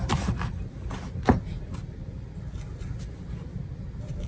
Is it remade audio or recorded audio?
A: recorded